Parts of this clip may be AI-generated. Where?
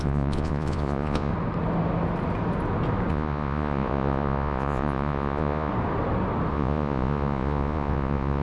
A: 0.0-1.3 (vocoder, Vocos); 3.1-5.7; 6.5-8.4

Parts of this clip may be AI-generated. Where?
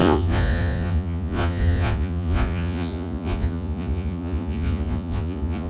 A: 0.0-5.7 (vocoder, Vocos)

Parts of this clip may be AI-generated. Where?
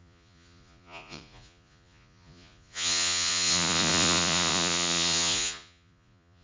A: 0.0-6.4 (vocoder, Vocos)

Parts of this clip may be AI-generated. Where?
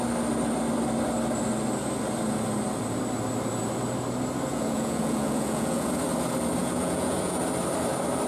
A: 4.5-5.9 (vocoder, Vocos); 6.6-7.4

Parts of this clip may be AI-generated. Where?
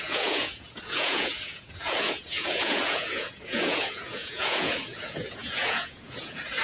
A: 0.0-6.6 (vocoder, Vocos)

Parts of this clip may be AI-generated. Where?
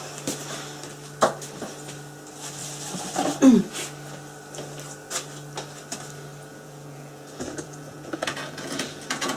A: 6.5-9.4 (vocoder, Vocos)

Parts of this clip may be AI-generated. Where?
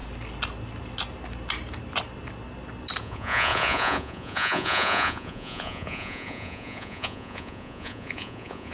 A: 3.0-8.7 (vocoder, Vocos)